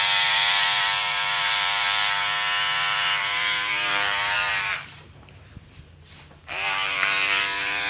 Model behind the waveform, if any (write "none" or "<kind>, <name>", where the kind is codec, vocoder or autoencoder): vocoder, BigVGAN v2